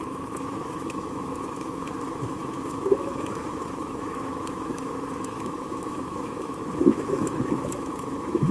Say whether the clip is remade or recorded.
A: remade